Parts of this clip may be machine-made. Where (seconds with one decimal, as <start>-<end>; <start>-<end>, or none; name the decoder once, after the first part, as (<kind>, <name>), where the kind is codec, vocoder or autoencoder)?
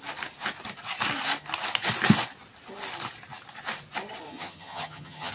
4.3-5.3 (vocoder, HiFi-GAN)